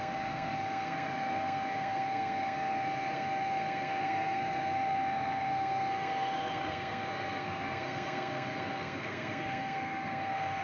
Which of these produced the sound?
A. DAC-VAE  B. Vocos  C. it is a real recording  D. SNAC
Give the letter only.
D